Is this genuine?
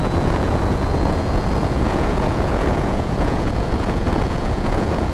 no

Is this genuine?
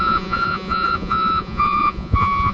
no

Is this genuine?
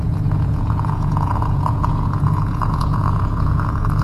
no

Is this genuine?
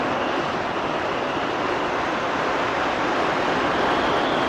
yes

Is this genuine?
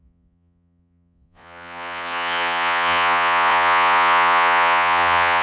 no